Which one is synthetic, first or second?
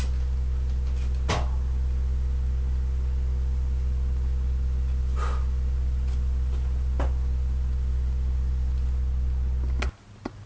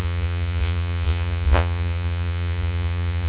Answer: second